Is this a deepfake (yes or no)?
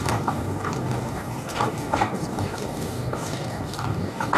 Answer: yes